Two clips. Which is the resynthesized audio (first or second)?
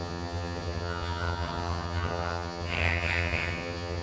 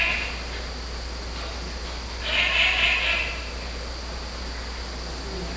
first